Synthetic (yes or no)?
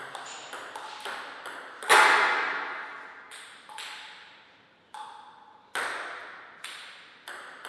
no